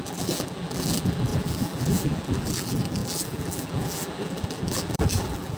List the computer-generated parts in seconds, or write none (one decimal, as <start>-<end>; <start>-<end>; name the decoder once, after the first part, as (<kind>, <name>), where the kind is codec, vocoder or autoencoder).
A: 0.0-5.6 (vocoder, BigVGAN v2)